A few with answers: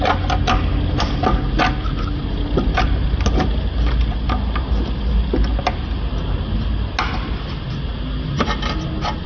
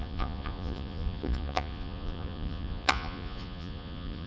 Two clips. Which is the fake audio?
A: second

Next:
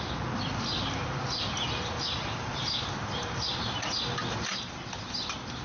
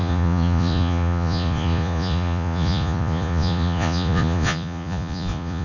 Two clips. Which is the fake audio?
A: second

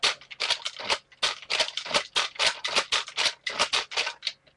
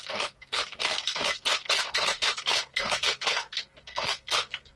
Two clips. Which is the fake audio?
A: second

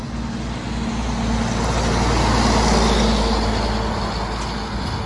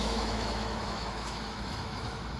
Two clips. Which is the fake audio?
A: second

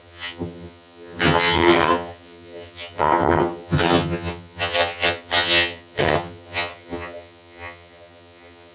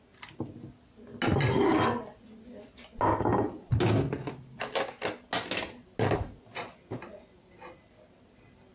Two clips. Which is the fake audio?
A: first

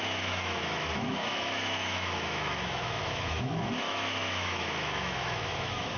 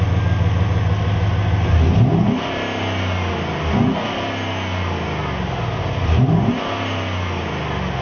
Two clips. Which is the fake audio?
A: first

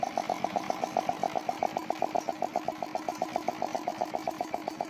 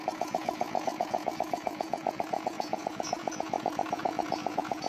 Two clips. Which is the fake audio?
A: second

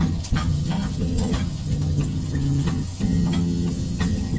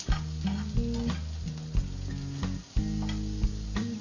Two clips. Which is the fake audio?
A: first